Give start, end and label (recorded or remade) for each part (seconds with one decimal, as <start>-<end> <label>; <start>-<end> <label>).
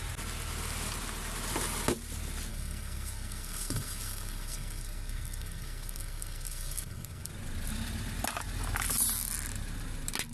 0.0-2.5 recorded; 2.5-7.3 remade; 7.3-10.3 recorded